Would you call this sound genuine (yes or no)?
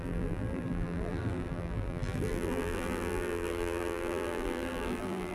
no